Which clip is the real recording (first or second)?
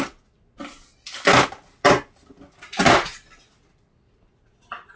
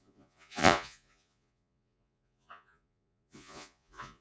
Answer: first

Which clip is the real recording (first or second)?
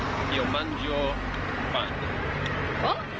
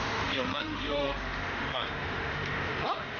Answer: first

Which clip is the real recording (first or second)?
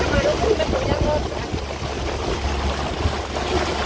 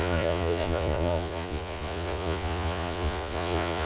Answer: first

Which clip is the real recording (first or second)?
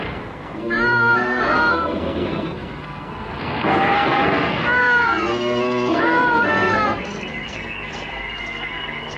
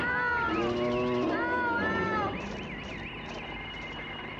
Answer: second